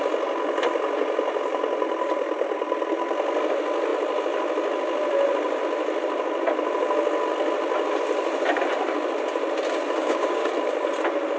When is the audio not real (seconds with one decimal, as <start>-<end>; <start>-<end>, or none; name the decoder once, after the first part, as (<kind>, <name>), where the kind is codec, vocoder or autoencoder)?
10.0-10.5 (codec, DAC)